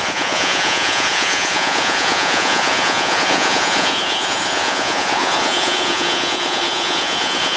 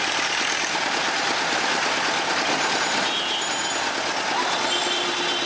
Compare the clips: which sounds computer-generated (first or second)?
first